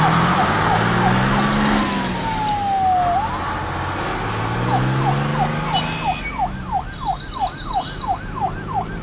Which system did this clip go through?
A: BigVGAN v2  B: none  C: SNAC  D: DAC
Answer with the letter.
B